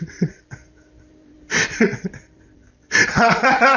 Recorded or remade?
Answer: recorded